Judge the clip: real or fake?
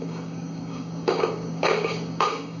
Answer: fake